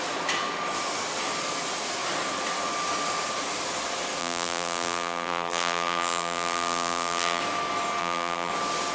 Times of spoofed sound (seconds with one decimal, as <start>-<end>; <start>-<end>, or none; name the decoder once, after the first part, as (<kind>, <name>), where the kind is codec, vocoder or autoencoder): 4.2-7.4 (vocoder, BigVGAN v2); 8.0-8.5